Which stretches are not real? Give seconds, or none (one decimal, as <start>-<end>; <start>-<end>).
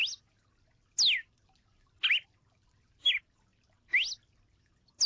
none